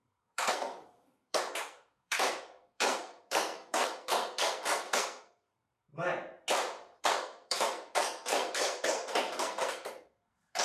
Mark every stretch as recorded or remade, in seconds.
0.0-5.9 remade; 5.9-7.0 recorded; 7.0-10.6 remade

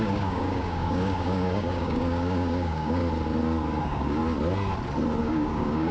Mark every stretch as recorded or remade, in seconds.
0.0-3.0 remade; 3.0-3.8 recorded; 3.8-4.2 remade; 4.2-5.2 recorded; 5.2-5.9 remade

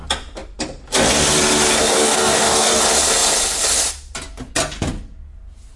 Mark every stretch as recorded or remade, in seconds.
0.0-1.9 recorded; 1.9-2.8 remade; 2.8-5.8 recorded

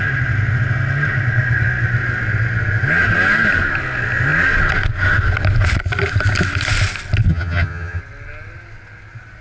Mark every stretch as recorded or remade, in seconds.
0.0-7.3 recorded; 7.3-8.0 remade; 8.0-9.4 recorded